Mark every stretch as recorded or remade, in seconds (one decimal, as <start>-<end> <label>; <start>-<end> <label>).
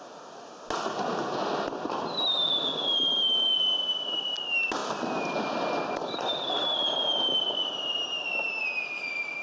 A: 0.0-9.4 recorded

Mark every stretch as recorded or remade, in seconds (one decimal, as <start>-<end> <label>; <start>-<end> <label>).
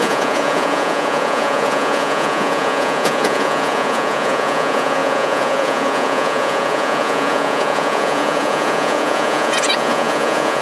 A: 0.0-10.6 remade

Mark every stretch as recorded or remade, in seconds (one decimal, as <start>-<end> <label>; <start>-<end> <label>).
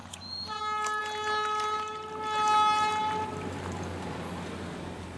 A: 0.0-0.6 remade; 0.6-5.2 recorded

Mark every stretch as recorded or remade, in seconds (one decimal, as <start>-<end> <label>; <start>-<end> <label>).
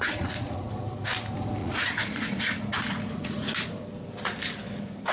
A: 0.0-0.6 remade; 0.6-1.6 recorded; 1.6-3.8 remade; 3.8-5.1 recorded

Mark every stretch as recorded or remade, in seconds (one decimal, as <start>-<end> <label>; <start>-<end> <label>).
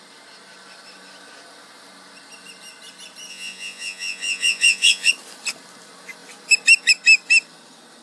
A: 0.0-3.3 recorded; 3.3-5.1 remade; 5.1-8.0 recorded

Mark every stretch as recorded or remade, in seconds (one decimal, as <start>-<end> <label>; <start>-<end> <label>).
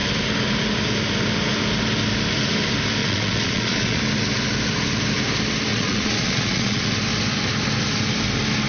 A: 0.0-3.0 recorded; 3.0-4.0 remade; 4.0-5.7 recorded; 5.7-6.9 remade; 6.9-8.7 recorded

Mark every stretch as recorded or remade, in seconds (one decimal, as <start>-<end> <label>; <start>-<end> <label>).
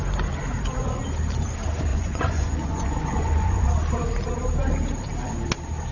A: 0.0-1.9 recorded; 1.9-3.7 remade; 3.7-5.9 recorded